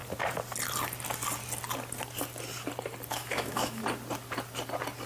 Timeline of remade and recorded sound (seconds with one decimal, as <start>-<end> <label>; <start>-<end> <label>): 0.0-3.1 recorded; 3.1-3.8 remade; 3.8-5.1 recorded

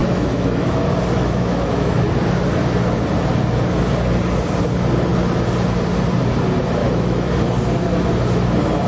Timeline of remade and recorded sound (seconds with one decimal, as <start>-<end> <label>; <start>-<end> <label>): 0.0-0.7 remade; 0.7-1.2 recorded; 1.2-2.0 remade; 2.0-6.8 recorded; 6.8-7.3 remade; 7.3-8.9 recorded